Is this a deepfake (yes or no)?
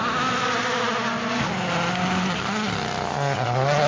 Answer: no